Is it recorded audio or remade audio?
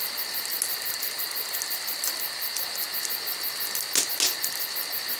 recorded